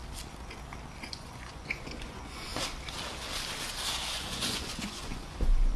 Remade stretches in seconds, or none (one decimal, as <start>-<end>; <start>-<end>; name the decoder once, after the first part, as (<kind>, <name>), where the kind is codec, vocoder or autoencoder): 1.0-2.5 (vocoder, Vocos); 4.1-5.8